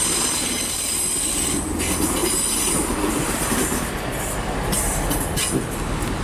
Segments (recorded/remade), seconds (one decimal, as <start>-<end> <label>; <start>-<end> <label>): 0.0-6.2 recorded